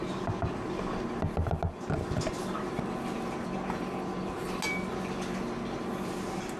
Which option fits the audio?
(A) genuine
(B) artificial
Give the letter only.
A